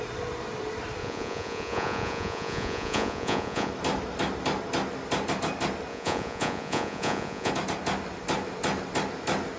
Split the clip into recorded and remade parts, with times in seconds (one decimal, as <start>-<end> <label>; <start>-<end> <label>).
0.0-1.0 recorded; 1.0-3.7 remade; 3.7-5.9 recorded; 5.9-7.5 remade; 7.5-9.6 recorded

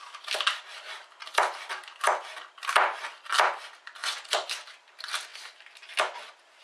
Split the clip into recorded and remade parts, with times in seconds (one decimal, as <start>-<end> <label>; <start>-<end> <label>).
0.0-4.0 recorded; 4.0-4.5 remade; 4.5-6.6 recorded

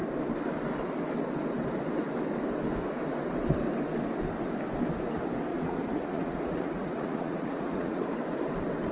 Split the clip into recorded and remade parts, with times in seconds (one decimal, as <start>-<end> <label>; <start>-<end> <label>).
0.0-5.5 recorded; 5.5-8.0 remade; 8.0-8.9 recorded

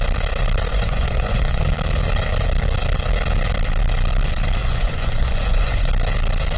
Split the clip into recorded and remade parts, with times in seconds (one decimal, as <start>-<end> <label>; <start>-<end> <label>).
0.0-0.7 recorded; 0.7-1.6 remade; 1.6-4.6 recorded; 4.6-5.9 remade; 5.9-6.6 recorded

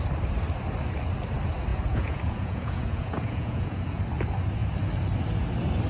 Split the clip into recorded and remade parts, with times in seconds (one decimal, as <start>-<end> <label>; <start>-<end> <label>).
0.0-1.7 recorded; 1.7-4.0 remade; 4.0-5.9 recorded

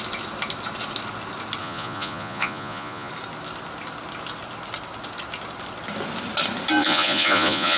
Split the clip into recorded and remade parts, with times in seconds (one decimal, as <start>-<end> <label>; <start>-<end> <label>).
0.0-1.6 recorded; 1.6-3.1 remade; 3.1-6.8 recorded; 6.8-7.8 remade